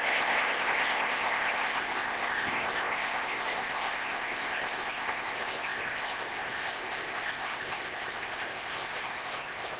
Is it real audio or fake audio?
fake